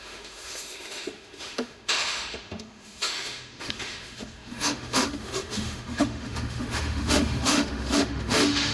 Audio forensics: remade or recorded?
remade